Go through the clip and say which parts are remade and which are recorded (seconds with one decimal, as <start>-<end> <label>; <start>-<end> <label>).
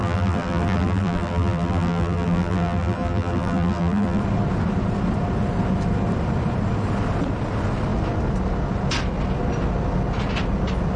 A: 0.0-4.2 remade; 4.2-11.0 recorded